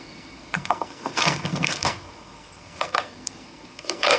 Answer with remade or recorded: remade